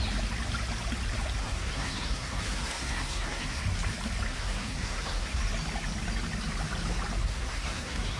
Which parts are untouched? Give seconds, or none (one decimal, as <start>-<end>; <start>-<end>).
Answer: 0.0-1.4; 3.6-4.3; 5.4-7.2